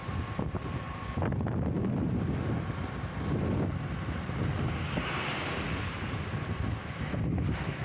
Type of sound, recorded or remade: recorded